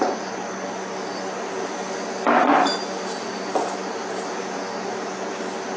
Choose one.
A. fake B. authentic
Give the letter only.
B